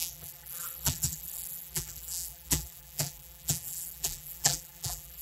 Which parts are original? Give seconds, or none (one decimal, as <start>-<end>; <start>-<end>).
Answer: none

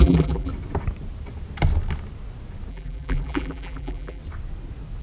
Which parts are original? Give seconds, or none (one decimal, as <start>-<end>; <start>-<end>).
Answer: 0.5-2.7; 4.2-5.0

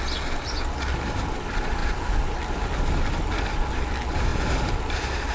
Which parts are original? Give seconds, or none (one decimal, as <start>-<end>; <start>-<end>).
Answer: 0.0-4.3

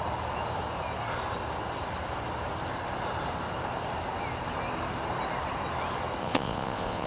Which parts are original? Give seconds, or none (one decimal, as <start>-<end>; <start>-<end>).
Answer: 0.0-6.2